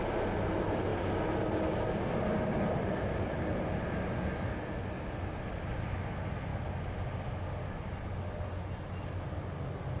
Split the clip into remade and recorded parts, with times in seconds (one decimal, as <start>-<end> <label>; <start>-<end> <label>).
0.0-10.0 recorded

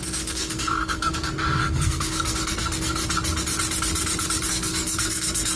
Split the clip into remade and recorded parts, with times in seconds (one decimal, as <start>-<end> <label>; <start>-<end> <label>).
0.0-3.0 remade; 3.0-4.5 recorded; 4.5-5.6 remade

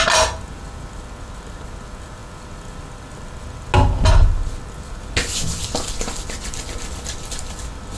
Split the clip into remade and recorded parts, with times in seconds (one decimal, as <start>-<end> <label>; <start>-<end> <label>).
0.0-8.0 recorded

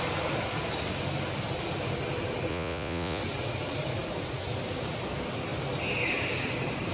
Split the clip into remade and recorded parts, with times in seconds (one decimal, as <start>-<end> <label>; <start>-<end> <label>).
0.0-2.5 recorded; 2.5-3.2 remade; 3.2-6.9 recorded

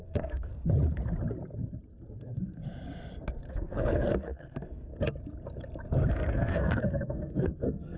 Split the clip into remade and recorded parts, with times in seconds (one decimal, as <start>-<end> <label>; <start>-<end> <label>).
0.0-0.5 remade; 0.5-2.2 recorded; 2.2-2.6 remade; 2.6-3.5 recorded; 3.5-4.9 remade; 4.9-6.1 recorded; 6.1-8.0 remade

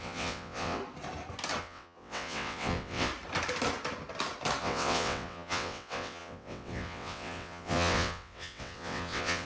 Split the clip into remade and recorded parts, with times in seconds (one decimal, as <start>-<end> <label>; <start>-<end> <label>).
0.0-0.8 remade; 0.8-1.6 recorded; 1.6-3.1 remade; 3.1-4.6 recorded; 4.6-9.4 remade

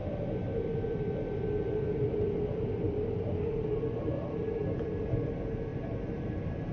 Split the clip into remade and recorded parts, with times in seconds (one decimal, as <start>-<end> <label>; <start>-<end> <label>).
0.0-6.7 recorded